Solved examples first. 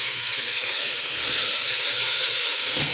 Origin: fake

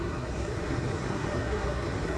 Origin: fake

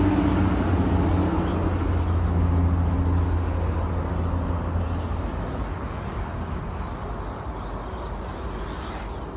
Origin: real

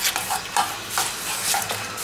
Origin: real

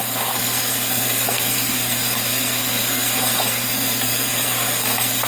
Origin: fake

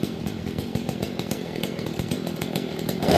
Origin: fake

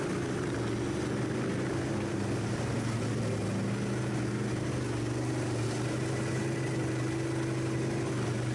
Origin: real